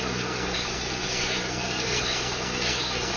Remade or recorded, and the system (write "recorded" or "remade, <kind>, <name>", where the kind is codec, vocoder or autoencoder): remade, codec, SNAC